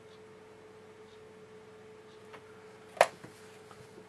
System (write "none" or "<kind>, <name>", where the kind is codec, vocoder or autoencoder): none